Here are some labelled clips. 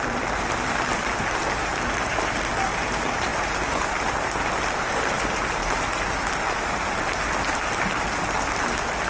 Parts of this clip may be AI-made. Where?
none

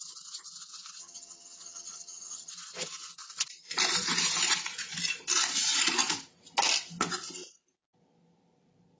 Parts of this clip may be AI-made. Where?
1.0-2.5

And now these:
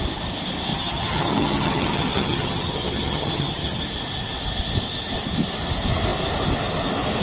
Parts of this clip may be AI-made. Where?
0.7-3.8

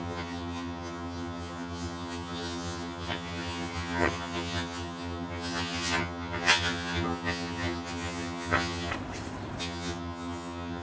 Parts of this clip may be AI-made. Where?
0.0-8.9; 9.6-10.8

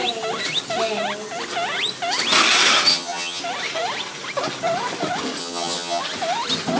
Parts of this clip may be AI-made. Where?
2.9-3.4; 5.4-6.0

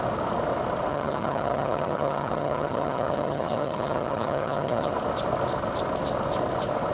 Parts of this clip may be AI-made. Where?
0.9-4.9

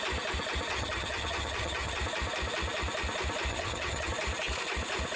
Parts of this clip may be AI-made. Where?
0.7-2.0; 3.5-4.1